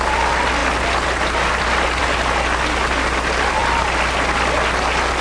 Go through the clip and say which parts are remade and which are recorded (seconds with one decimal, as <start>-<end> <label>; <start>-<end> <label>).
0.0-5.2 recorded